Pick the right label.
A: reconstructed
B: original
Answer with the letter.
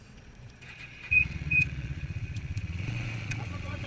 A